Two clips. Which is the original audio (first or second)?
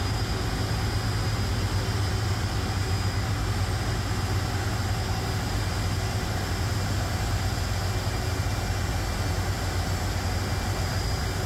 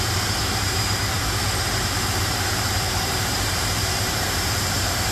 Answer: first